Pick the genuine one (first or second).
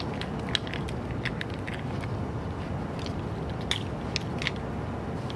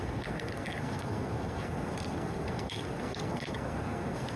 first